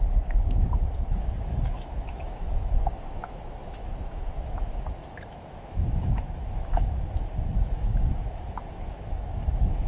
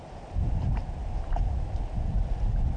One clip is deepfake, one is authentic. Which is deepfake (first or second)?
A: first